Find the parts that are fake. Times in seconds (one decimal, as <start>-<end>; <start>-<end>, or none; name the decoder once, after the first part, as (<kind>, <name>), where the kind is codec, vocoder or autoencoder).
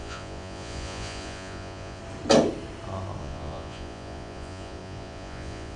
0.0-2.0 (vocoder, Vocos); 3.2-5.8